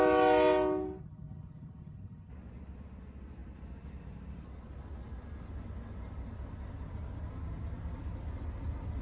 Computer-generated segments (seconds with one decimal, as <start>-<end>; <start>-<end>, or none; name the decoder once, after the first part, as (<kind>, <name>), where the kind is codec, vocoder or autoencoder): 1.0-2.3 (vocoder, HiFi-GAN)